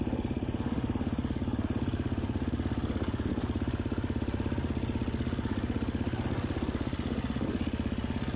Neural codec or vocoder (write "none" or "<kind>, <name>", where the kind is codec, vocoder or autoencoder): none